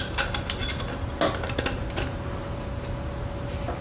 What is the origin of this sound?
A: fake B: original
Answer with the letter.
B